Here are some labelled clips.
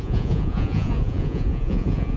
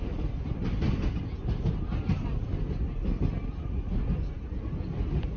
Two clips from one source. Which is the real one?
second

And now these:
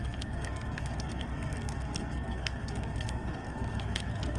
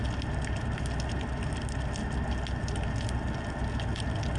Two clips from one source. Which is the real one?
second